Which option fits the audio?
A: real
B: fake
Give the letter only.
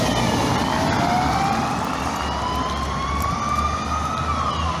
A